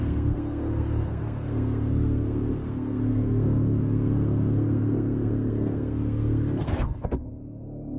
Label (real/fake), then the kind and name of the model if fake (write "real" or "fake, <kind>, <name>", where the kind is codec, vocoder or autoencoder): fake, codec, SNAC